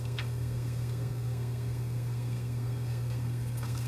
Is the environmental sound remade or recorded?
remade